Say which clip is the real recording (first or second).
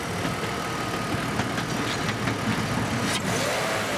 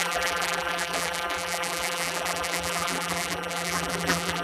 first